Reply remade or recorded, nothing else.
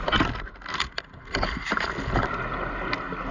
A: recorded